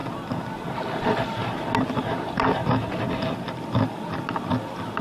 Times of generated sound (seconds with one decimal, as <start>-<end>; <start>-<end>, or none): none